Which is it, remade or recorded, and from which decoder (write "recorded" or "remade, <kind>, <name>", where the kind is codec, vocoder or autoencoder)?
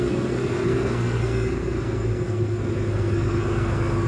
remade, codec, SNAC